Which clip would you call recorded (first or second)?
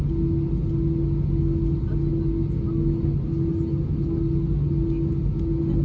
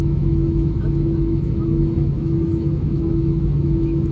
first